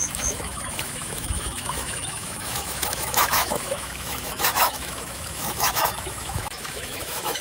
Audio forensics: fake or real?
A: fake